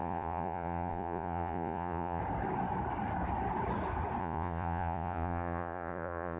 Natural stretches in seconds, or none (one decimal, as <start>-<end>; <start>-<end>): 2.2-4.2